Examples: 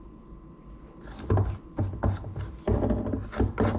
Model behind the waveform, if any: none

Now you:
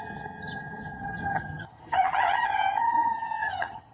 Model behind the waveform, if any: vocoder, HiFi-GAN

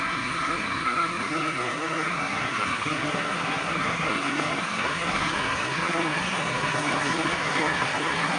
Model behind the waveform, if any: codec, SNAC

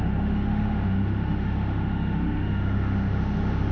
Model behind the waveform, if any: autoencoder, DAC-VAE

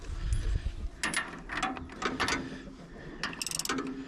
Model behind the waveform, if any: none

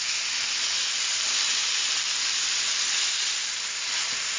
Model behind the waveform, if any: none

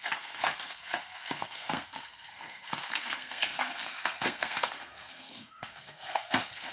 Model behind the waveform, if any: codec, SNAC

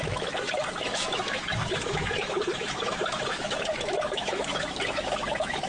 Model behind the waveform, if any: autoencoder, DAC-VAE